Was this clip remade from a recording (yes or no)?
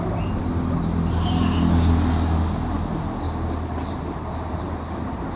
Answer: no